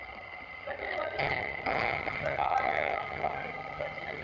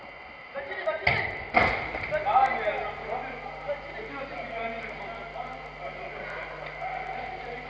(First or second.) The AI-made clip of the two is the first